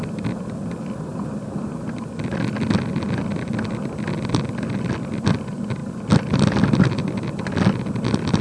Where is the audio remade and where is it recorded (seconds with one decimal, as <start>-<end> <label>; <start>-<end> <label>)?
0.0-5.8 recorded; 5.8-7.3 remade; 7.3-8.4 recorded